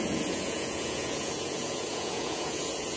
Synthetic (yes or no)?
yes